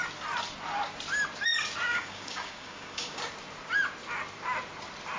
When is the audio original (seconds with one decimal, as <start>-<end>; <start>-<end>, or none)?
0.0-1.9; 3.2-5.2